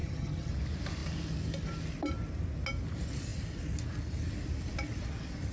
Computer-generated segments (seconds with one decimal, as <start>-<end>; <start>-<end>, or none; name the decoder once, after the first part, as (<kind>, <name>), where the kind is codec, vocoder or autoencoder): 0.0-0.5 (vocoder, HiFi-GAN)